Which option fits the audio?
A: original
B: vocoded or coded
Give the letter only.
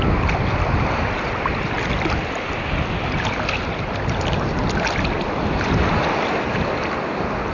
A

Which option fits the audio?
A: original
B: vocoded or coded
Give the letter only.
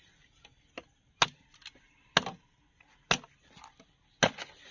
A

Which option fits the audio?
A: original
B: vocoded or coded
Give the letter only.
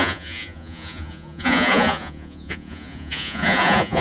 B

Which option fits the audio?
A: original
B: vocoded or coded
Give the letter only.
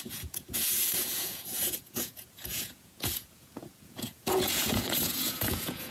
B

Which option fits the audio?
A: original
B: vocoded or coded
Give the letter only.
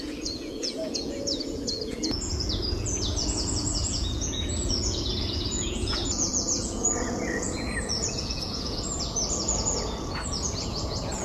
B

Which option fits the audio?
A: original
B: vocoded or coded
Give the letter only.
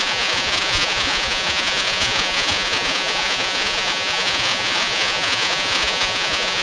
B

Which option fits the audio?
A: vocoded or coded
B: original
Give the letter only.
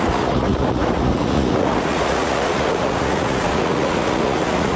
A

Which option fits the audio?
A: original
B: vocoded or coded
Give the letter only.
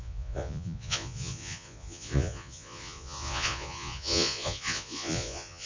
B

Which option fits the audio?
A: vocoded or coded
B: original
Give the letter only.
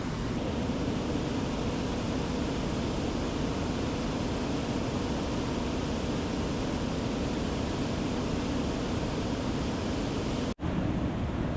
B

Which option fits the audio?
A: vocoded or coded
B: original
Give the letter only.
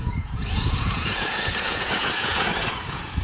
A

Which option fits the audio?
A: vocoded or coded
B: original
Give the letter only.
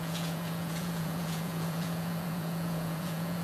A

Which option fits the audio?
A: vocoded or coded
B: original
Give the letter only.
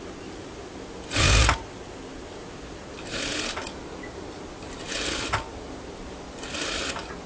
B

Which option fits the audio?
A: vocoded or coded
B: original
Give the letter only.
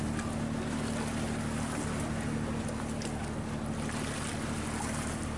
B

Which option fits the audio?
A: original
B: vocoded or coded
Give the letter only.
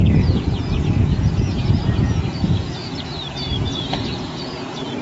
B